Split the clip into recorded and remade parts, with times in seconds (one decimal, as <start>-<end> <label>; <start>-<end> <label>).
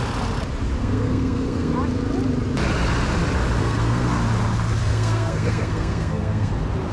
0.0-0.8 recorded; 0.8-1.7 remade; 1.7-3.6 recorded; 3.6-4.1 remade; 4.1-4.8 recorded; 4.8-6.5 remade; 6.5-6.9 recorded